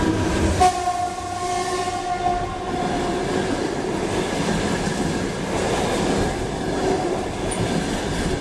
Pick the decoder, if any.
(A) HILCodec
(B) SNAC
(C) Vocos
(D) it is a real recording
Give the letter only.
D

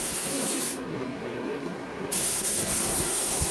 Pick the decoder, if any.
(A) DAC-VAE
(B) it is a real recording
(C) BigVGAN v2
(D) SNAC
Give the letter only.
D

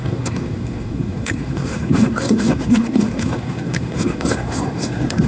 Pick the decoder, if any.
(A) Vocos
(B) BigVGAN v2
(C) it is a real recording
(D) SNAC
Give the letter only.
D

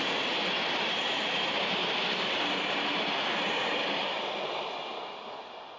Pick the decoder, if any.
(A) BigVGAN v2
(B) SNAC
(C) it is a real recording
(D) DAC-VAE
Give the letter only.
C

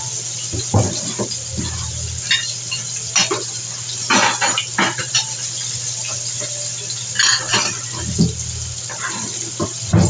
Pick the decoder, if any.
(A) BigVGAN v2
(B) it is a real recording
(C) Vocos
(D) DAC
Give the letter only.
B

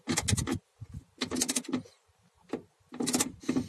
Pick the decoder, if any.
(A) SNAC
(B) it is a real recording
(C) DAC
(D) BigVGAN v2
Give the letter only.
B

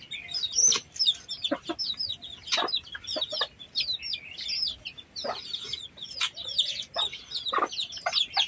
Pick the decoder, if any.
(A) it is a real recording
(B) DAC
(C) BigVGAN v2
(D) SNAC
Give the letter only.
A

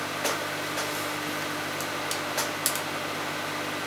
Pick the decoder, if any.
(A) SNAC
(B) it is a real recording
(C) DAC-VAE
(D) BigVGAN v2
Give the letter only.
B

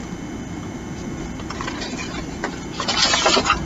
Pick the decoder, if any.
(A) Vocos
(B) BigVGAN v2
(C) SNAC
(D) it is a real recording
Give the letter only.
D